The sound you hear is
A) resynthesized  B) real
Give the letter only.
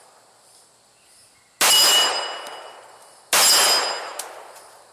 B